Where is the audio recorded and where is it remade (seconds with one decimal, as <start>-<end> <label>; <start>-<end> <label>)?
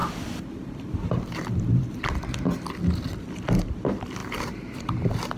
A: 0.0-2.7 remade; 2.7-4.2 recorded; 4.2-4.8 remade; 4.8-5.4 recorded